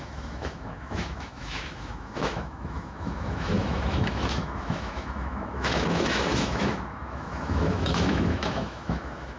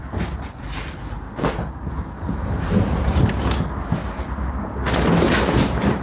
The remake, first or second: first